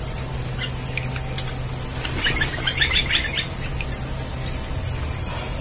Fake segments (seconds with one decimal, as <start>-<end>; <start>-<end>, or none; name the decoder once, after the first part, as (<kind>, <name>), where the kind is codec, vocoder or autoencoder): none